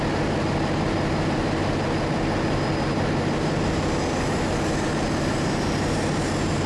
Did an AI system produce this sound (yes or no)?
no